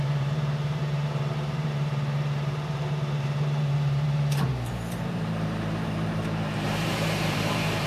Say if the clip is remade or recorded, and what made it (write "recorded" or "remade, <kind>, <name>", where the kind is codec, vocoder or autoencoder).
remade, vocoder, BigVGAN v2